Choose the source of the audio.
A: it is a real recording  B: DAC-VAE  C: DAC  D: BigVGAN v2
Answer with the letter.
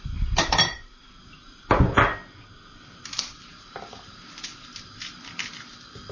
A